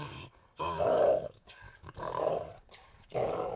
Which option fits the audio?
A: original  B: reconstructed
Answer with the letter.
B